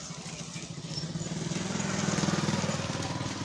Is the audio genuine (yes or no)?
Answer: yes